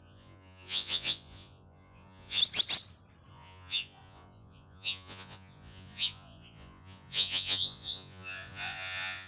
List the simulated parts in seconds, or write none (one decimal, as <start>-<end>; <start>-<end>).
0.0-2.4; 3.3-9.3